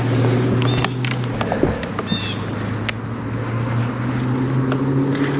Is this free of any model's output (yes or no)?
yes